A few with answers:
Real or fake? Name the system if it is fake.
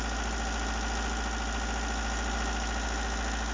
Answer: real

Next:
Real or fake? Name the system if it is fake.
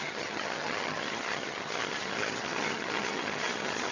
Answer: fake, vocoder, HiFi-GAN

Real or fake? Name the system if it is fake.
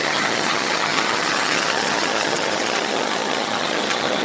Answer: fake, vocoder, HiFi-GAN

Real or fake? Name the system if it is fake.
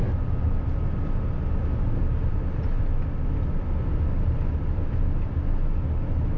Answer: real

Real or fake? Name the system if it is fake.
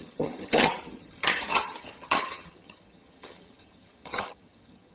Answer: fake, vocoder, HiFi-GAN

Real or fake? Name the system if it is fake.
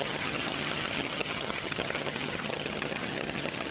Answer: fake, vocoder, HiFi-GAN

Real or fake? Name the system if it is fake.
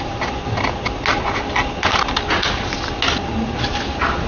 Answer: real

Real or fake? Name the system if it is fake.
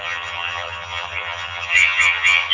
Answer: fake, vocoder, HiFi-GAN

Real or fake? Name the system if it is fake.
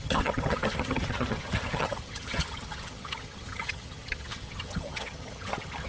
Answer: fake, vocoder, HiFi-GAN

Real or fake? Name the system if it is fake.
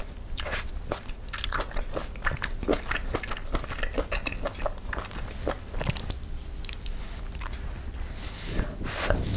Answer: real